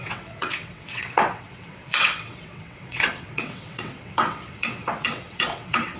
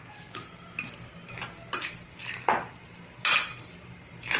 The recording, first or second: second